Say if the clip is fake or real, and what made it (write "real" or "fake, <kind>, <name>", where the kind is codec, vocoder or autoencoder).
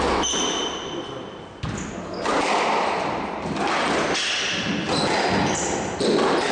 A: real